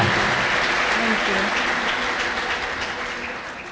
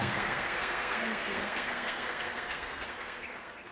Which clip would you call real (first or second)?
first